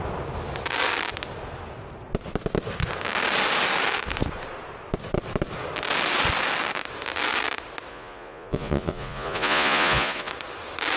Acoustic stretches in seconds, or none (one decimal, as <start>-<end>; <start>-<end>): 0.0-7.9; 10.3-11.0